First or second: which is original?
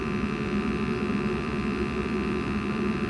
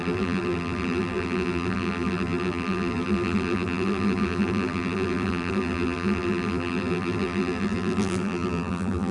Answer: first